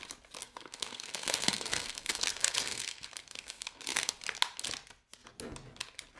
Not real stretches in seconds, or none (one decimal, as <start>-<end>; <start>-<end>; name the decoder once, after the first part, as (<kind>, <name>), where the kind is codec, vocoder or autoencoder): 0.4-4.1 (codec, SNAC)